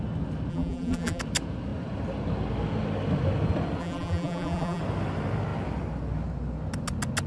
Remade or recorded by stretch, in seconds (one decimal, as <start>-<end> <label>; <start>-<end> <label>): 0.0-0.5 recorded; 0.5-1.2 remade; 1.2-3.8 recorded; 3.8-4.8 remade; 4.8-7.3 recorded